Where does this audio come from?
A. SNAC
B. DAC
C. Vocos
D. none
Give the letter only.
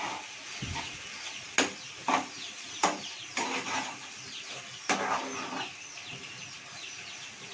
D